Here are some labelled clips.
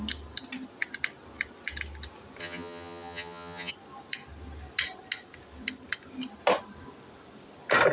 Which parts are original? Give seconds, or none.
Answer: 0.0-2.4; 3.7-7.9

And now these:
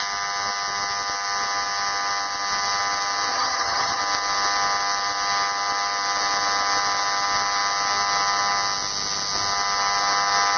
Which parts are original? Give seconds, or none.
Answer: 0.0-3.3; 4.0-10.6

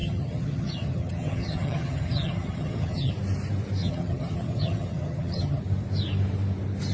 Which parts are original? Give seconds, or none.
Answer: 3.1-3.8; 5.6-6.9

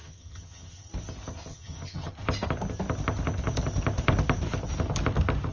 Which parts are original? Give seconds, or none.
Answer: 0.9-1.5; 2.1-5.5

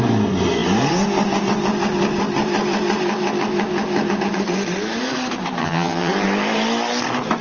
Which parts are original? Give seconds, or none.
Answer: 0.0-5.6; 6.1-7.4

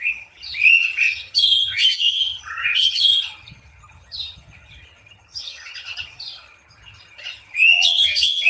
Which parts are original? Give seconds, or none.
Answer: none